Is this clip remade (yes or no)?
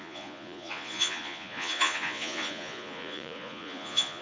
yes